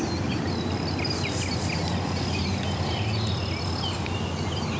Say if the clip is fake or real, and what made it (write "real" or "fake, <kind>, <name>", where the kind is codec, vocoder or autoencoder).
real